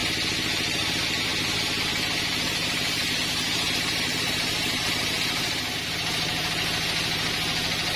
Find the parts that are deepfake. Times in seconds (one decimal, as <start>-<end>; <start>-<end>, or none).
none